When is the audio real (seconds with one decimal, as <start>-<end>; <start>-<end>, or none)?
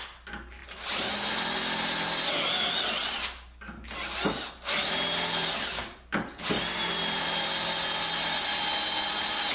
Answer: 0.0-9.5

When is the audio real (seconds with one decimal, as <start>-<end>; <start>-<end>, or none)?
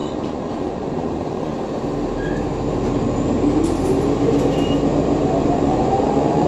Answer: 1.5-5.4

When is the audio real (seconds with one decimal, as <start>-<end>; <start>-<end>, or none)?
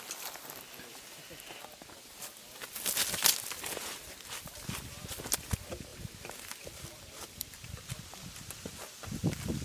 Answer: 0.0-5.9; 8.0-9.6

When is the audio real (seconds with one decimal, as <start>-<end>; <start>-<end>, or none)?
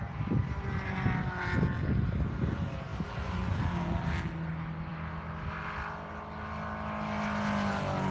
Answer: 0.0-8.1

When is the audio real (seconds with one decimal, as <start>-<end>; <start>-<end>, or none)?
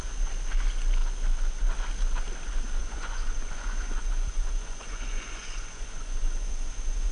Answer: 0.0-2.8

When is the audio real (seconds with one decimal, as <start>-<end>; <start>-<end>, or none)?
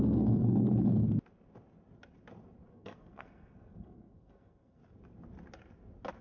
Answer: 0.9-2.7; 4.8-6.2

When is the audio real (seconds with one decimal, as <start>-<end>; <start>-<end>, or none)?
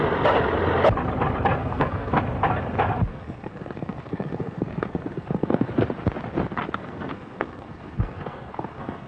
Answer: 0.0-1.6; 2.2-3.1; 5.7-6.8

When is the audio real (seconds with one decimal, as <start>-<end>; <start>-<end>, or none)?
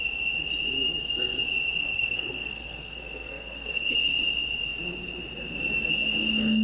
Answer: 0.0-1.8; 3.9-6.6